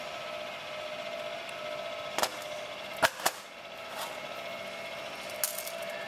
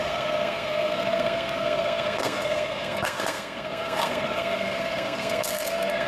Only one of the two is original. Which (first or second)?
first